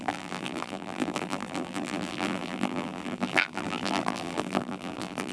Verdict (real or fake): fake